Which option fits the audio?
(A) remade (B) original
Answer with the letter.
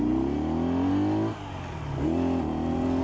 B